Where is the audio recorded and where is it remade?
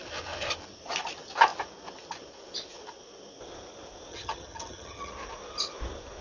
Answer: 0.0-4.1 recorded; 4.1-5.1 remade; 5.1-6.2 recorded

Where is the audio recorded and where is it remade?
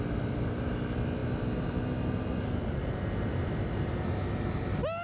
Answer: 0.0-5.0 recorded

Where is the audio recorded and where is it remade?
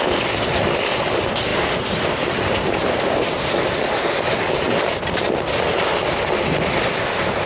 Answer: 0.0-7.5 recorded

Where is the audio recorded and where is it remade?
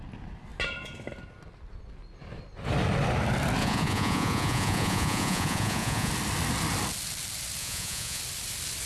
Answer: 0.0-3.6 recorded; 3.6-6.1 remade; 6.1-7.6 recorded; 7.6-8.2 remade; 8.2-8.9 recorded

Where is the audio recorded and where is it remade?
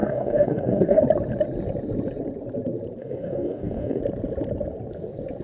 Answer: 0.0-1.0 remade; 1.0-3.0 recorded; 3.0-4.0 remade; 4.0-5.4 recorded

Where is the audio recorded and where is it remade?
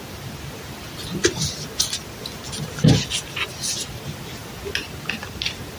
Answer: 0.0-5.8 recorded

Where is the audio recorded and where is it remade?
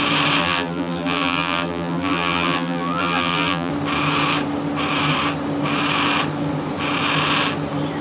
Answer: 0.0-0.4 recorded; 0.4-3.7 remade; 3.7-8.0 recorded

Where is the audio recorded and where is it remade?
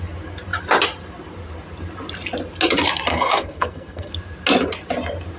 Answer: 0.0-3.1 recorded; 3.1-4.1 remade; 4.1-5.4 recorded